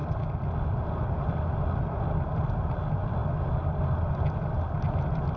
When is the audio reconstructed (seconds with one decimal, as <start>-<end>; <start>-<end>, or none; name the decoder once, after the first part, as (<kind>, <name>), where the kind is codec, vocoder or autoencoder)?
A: none